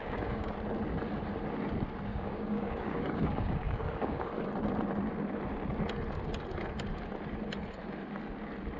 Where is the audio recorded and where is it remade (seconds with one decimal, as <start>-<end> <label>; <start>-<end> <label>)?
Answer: 0.0-0.5 remade; 0.5-2.1 recorded; 2.1-4.3 remade; 4.3-8.8 recorded